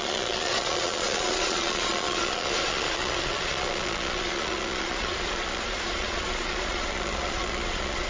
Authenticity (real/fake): fake